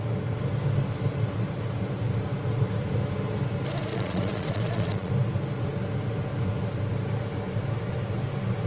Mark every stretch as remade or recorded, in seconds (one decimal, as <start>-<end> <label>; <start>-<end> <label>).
0.0-3.9 recorded; 3.9-5.1 remade; 5.1-8.7 recorded